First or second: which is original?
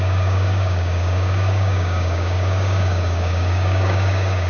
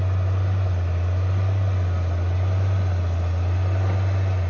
second